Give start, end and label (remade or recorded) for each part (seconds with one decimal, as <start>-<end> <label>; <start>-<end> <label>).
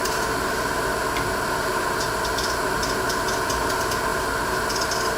0.0-5.2 recorded